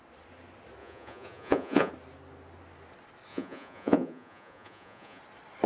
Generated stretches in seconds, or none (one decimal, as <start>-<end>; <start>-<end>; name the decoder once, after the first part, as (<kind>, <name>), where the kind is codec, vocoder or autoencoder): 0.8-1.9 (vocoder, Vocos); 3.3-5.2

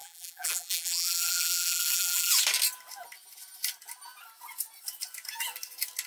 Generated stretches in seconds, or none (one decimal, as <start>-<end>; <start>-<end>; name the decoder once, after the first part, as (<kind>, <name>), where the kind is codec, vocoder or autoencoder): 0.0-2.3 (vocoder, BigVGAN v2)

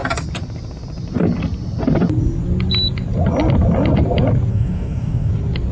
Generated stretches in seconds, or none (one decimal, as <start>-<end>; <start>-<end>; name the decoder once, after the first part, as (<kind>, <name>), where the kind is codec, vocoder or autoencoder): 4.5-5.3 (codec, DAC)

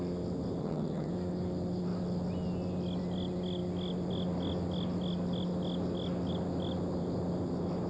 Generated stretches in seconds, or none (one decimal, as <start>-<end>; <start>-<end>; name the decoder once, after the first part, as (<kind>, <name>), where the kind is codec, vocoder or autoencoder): 0.6-1.1 (vocoder, HiFi-GAN)